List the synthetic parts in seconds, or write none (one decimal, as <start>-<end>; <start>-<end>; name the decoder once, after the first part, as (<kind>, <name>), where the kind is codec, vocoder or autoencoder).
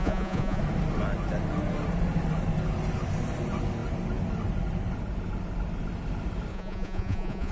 0.0-0.6 (vocoder, Vocos); 6.5-7.5